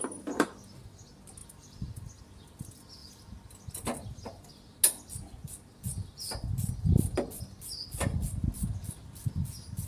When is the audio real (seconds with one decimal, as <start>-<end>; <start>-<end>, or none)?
0.0-1.4; 2.2-3.0; 4.5-9.9